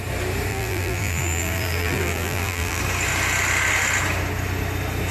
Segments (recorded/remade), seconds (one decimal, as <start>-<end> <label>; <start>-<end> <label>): 0.0-0.5 recorded; 0.5-2.8 remade; 2.8-5.1 recorded